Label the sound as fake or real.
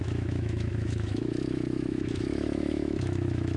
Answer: fake